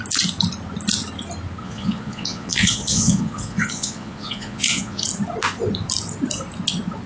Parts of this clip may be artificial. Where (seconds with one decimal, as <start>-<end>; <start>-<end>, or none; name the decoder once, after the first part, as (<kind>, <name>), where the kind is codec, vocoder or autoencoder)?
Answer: 1.6-5.0 (vocoder, Vocos)